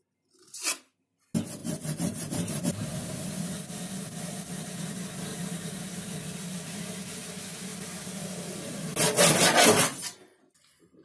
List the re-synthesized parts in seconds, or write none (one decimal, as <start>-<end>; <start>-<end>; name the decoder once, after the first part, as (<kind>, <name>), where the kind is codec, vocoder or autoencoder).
1.6-2.9 (vocoder, BigVGAN v2); 5.3-6.1; 7.7-8.5